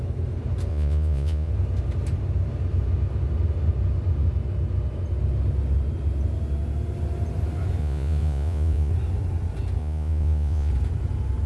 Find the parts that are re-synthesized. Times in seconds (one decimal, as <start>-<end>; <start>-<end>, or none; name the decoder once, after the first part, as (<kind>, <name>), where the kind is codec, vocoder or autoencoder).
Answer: 0.7-1.5 (vocoder, Vocos); 7.8-8.9; 9.8-10.7